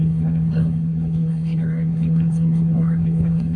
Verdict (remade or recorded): remade